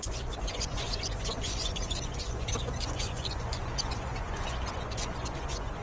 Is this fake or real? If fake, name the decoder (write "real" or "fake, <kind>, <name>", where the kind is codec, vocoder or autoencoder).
fake, vocoder, Vocos